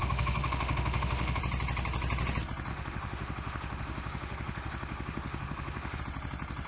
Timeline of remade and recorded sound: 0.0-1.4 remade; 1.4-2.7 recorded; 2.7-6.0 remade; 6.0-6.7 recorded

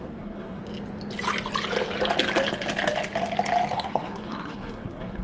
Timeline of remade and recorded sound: 0.0-0.6 remade; 0.6-3.7 recorded; 3.7-5.2 remade

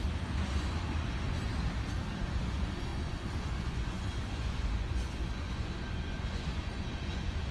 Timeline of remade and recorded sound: 0.0-1.5 remade; 1.5-2.2 recorded; 2.2-7.5 remade

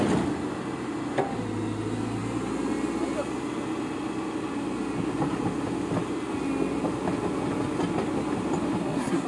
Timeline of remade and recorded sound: 0.0-8.8 recorded; 8.8-9.3 remade

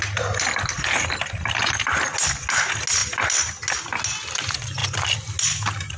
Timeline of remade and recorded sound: 0.0-6.0 recorded

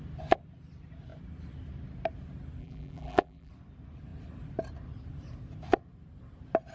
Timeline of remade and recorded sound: 0.0-2.6 recorded; 2.6-3.5 remade; 3.5-6.7 recorded